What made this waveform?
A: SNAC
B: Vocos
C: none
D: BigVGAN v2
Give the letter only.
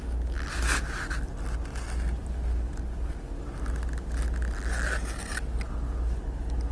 C